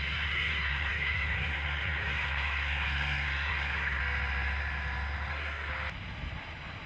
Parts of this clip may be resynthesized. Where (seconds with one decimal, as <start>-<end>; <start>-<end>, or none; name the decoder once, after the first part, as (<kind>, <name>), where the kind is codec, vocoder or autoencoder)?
0.0-4.0 (codec, SNAC); 5.3-5.7